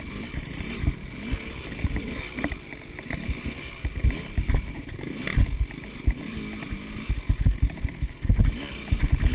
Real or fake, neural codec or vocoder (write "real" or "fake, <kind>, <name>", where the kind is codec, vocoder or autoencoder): real